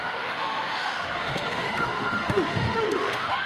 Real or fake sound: fake